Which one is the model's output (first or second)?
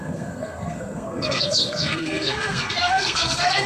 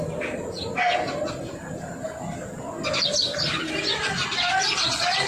first